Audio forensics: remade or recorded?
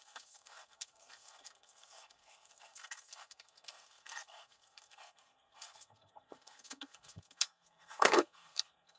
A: remade